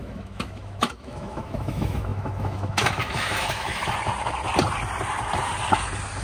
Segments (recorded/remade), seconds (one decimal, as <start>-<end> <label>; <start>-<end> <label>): 0.0-3.8 remade; 3.8-6.2 recorded